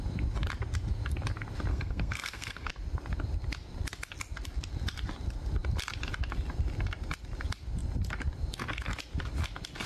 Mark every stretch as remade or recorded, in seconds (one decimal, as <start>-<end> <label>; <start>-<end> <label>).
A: 0.0-1.7 recorded; 1.7-2.7 remade; 2.7-9.9 recorded